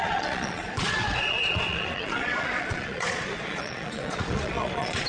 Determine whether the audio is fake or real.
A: fake